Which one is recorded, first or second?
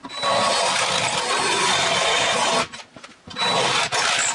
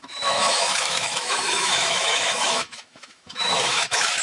first